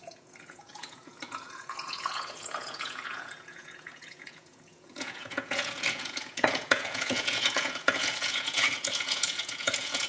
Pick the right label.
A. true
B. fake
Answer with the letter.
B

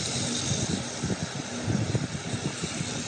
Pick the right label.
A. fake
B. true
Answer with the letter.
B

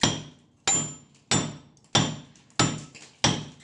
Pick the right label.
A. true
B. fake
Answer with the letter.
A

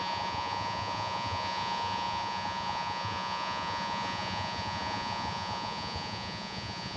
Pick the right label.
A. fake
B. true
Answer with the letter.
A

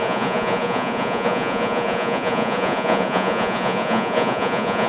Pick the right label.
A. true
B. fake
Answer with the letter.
B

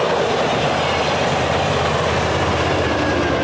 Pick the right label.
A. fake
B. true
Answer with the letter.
B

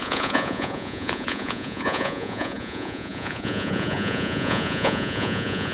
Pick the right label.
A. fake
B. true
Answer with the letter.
A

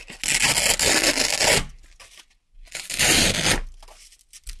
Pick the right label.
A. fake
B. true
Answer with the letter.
B